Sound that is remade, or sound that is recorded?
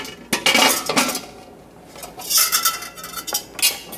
recorded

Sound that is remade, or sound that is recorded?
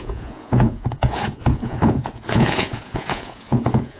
remade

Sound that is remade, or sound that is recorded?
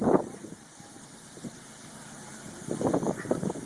recorded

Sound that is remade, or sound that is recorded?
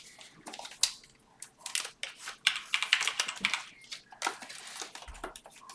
recorded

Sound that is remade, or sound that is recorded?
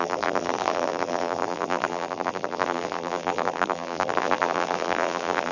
remade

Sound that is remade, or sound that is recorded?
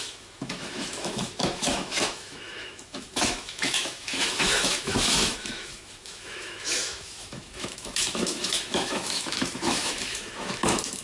remade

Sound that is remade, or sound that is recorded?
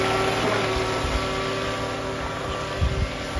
recorded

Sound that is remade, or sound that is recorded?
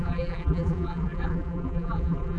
remade